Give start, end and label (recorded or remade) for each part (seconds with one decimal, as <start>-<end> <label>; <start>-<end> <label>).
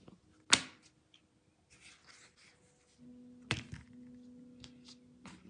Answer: 0.0-5.5 recorded